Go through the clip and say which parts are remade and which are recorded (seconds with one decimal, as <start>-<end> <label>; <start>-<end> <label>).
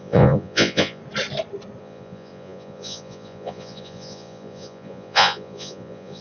0.0-1.0 remade; 1.0-1.8 recorded; 1.8-6.2 remade